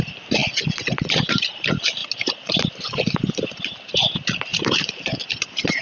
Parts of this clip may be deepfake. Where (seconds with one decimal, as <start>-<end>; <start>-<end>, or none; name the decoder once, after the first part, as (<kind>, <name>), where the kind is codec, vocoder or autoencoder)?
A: 2.0-3.9 (vocoder, BigVGAN v2); 4.5-5.2